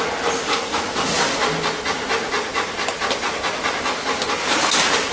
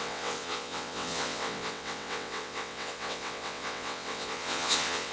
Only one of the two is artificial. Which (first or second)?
second